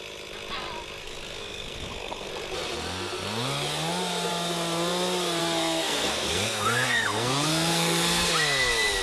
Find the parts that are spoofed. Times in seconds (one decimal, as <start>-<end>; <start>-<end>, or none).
1.0-2.3; 5.4-8.3